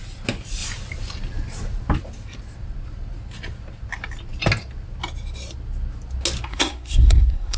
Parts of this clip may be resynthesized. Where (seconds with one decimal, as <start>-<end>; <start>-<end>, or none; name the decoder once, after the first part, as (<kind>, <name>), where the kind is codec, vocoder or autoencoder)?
6.5-7.6 (codec, SNAC)